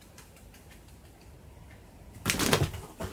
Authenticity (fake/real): real